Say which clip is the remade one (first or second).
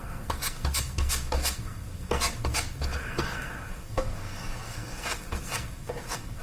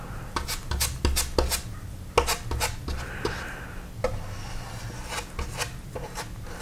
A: first